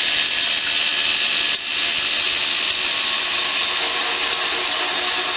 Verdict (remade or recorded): recorded